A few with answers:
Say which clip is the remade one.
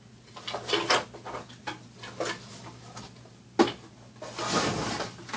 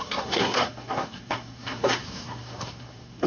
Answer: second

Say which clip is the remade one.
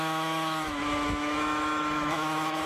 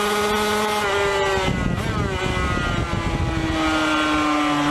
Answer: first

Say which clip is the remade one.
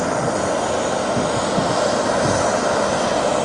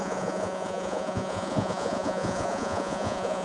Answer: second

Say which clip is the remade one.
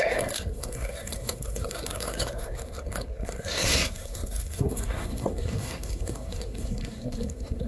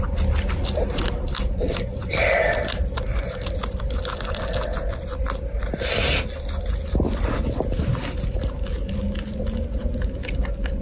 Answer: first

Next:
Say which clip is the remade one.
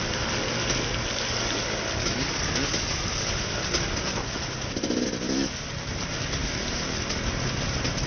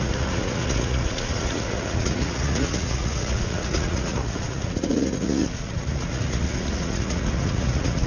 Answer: second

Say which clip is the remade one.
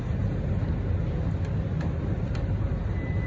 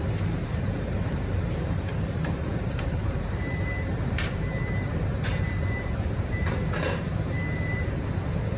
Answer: second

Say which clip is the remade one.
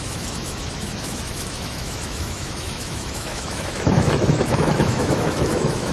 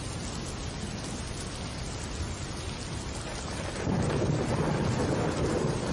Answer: first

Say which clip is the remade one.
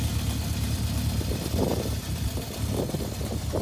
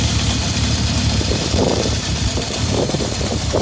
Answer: second